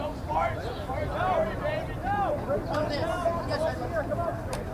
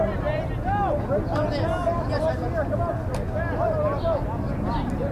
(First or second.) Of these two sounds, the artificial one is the first